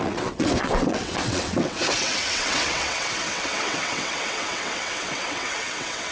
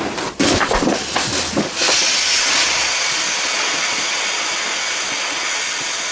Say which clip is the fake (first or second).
first